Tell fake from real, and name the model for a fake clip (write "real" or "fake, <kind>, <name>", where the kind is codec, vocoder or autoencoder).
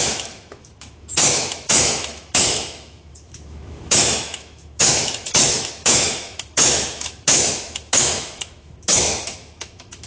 fake, autoencoder, DAC-VAE